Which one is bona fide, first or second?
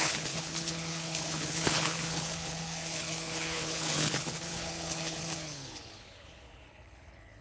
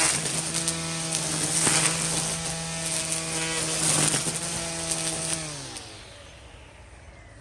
second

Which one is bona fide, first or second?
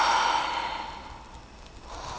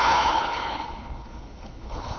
first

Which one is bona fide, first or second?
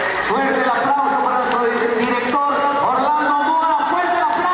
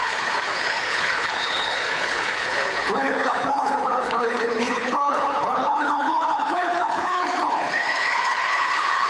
first